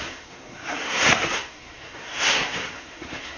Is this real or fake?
fake